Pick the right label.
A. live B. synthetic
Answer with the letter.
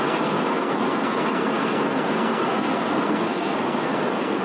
B